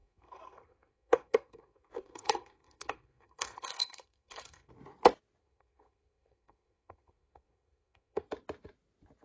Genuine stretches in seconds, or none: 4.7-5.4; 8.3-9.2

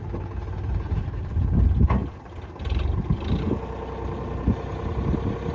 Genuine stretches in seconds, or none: 0.0-5.5

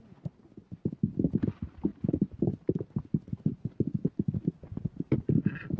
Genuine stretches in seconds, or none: 0.0-5.8

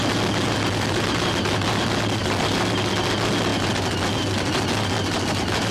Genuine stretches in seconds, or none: 0.0-5.7

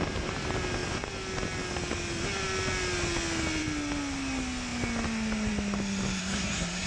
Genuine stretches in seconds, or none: 0.0-6.2